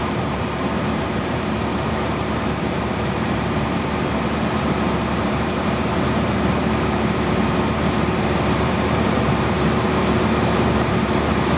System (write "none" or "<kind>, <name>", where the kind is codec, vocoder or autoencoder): vocoder, BigVGAN v2